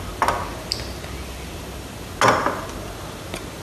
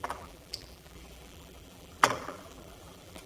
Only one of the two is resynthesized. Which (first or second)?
second